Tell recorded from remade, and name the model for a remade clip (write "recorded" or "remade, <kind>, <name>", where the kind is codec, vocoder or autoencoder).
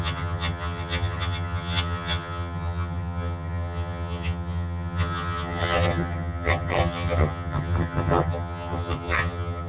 remade, vocoder, HiFi-GAN